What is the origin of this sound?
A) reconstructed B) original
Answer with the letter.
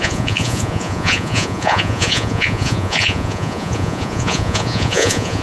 A